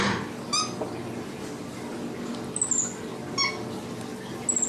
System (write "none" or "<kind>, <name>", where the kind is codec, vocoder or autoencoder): none